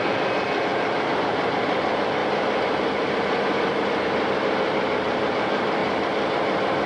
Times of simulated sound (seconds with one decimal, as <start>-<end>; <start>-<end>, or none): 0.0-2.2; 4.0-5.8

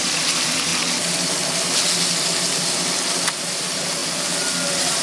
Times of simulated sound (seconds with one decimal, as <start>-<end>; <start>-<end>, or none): 0.0-0.7; 3.4-4.0

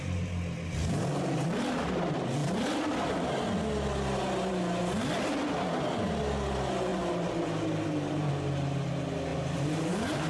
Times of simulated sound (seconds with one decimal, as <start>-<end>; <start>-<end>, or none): 6.9-8.3; 9.3-10.3

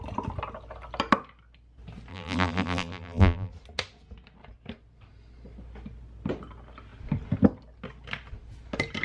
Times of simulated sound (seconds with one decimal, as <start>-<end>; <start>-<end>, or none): 2.1-3.5

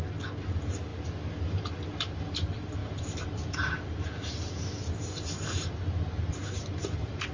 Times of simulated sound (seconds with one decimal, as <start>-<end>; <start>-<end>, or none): 2.8-7.3